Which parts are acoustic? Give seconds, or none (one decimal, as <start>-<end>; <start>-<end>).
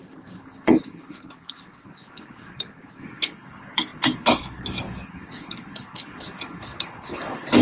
none